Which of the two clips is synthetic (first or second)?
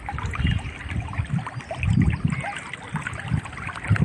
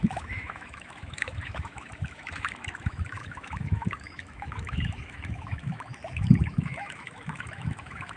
second